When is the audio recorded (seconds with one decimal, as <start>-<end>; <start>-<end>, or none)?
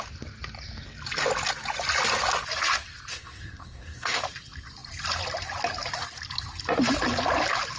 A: 0.0-3.1; 4.2-7.8